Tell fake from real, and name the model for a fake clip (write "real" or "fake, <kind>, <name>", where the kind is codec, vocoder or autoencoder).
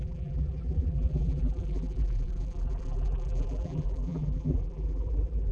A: fake, vocoder, BigVGAN v2